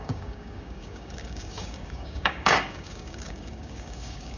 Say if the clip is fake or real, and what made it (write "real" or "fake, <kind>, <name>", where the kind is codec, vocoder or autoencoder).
fake, codec, DAC